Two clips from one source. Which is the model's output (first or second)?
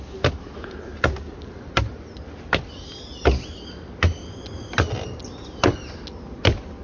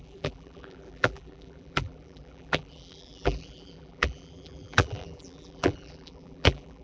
second